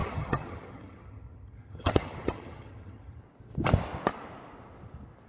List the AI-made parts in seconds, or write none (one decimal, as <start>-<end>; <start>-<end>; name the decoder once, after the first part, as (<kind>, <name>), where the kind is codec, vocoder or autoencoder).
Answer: 0.0-3.2 (vocoder, HiFi-GAN)